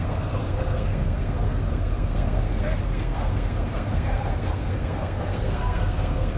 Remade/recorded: remade